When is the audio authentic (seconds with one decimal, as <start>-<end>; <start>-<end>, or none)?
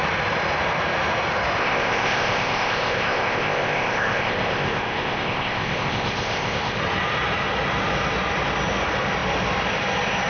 0.0-1.6; 6.8-10.3